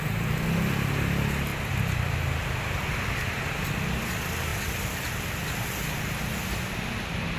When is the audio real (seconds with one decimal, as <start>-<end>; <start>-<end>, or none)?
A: 0.0-7.4